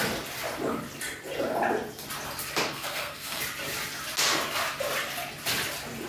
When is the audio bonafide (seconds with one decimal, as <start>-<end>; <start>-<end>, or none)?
0.0-2.7; 3.4-6.1